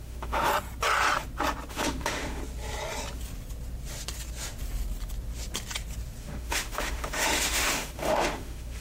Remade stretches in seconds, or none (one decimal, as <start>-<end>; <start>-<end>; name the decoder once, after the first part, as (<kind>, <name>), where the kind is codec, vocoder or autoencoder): 0.0-0.5 (autoencoder, DAC-VAE); 1.7-2.4; 6.2-8.8

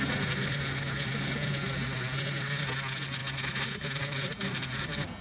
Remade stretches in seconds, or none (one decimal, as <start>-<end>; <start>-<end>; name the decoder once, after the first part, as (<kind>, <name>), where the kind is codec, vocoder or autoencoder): none

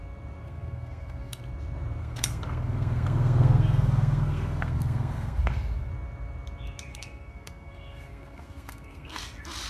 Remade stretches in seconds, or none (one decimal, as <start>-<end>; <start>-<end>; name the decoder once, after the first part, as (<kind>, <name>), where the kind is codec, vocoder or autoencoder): 0.4-1.4 (codec, SNAC); 2.0-5.9; 6.9-9.2

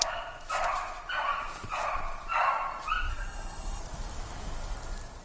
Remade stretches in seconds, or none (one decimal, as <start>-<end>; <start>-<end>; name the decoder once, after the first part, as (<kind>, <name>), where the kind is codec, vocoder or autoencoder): 3.1-3.8 (codec, SNAC)